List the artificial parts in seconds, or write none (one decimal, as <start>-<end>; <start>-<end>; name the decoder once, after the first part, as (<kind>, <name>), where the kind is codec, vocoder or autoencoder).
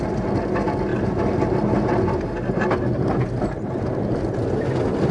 none